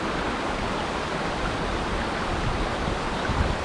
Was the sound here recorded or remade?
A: recorded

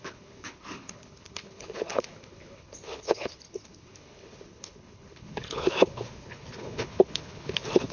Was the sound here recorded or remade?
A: remade